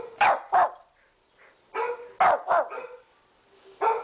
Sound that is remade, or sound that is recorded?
recorded